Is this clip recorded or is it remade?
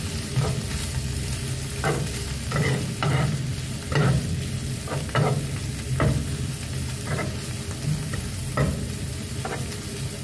recorded